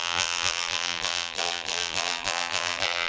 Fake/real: fake